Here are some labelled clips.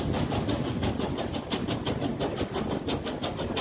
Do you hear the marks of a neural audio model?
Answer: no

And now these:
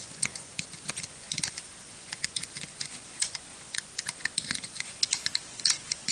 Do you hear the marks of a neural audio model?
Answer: yes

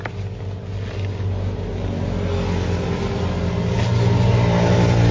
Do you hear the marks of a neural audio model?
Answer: no